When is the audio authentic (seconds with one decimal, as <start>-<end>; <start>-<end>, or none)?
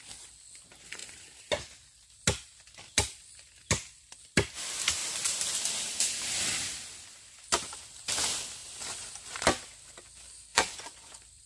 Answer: 0.0-10.5; 11.1-11.5